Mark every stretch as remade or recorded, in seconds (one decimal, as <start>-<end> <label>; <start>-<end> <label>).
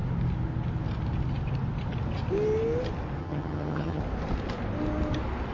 0.0-3.2 recorded; 3.2-4.0 remade; 4.0-5.5 recorded